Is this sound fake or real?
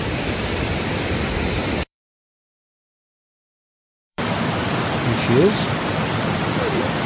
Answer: fake